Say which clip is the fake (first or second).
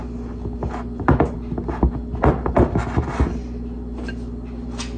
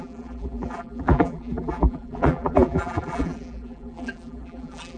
second